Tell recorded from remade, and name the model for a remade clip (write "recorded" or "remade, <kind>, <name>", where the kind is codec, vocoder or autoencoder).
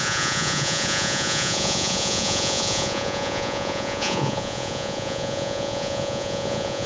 remade, vocoder, Vocos